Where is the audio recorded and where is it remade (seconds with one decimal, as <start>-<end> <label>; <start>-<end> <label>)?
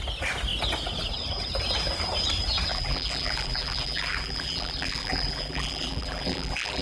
0.0-2.7 recorded; 2.7-6.8 remade